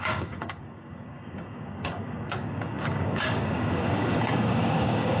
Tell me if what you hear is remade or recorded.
remade